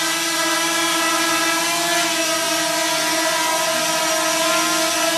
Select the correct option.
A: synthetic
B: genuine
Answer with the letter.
B